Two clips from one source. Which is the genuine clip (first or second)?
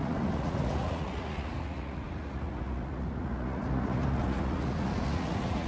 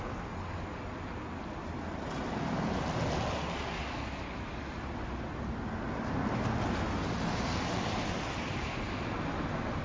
second